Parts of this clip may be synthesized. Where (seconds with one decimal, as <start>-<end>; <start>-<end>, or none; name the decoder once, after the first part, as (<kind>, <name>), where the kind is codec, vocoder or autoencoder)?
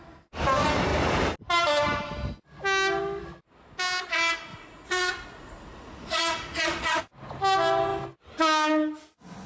4.5-7.0 (vocoder, Vocos)